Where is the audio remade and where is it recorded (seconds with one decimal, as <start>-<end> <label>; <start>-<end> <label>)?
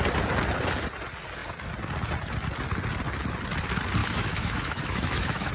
0.0-4.0 recorded; 4.0-5.5 remade